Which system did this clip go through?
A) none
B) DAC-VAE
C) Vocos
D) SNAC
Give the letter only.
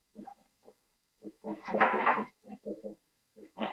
D